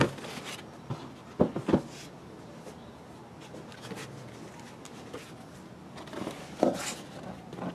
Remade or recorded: recorded